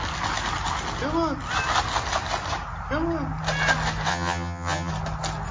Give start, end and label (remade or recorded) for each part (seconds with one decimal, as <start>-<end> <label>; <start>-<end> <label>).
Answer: 0.0-4.1 recorded; 4.1-4.9 remade; 4.9-5.5 recorded